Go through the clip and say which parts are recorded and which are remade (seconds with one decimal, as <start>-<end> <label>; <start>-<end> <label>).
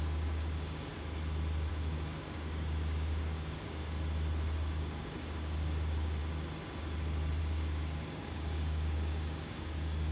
0.0-0.9 remade; 0.9-1.7 recorded; 1.7-3.8 remade; 3.8-4.8 recorded; 4.8-6.2 remade; 6.2-7.4 recorded; 7.4-10.1 remade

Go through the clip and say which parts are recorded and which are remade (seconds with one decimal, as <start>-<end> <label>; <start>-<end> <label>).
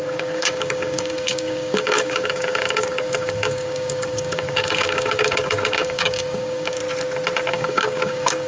0.0-6.8 remade; 6.8-7.5 recorded; 7.5-8.5 remade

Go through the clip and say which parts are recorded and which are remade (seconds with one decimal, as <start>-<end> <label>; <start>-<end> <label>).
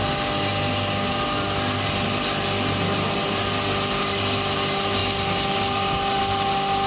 0.0-6.9 recorded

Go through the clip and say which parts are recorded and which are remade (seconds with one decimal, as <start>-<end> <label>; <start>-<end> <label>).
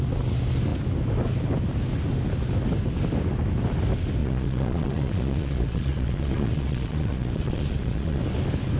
0.0-4.2 recorded; 4.2-8.2 remade; 8.2-8.8 recorded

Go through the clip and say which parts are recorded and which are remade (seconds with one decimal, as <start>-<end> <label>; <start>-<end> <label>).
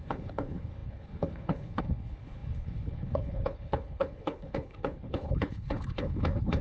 0.0-6.6 remade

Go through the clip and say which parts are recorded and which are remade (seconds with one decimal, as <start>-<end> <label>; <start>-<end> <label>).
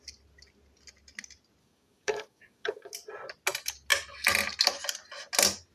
0.0-1.6 recorded; 1.6-2.9 remade; 2.9-5.7 recorded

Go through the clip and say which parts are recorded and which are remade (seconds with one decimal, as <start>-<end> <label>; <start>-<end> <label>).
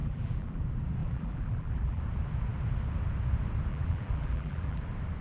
0.0-0.6 remade; 0.6-1.0 recorded; 1.0-2.0 remade; 2.0-3.7 recorded; 3.7-4.8 remade; 4.8-5.2 recorded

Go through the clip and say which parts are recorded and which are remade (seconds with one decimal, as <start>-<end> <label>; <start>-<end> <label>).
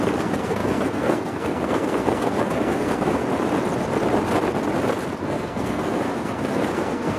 0.0-3.2 remade; 3.2-5.2 recorded; 5.2-7.2 remade